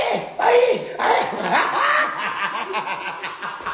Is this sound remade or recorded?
recorded